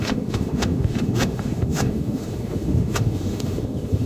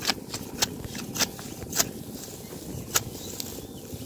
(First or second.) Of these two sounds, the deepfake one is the first